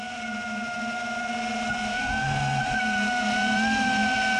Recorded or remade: remade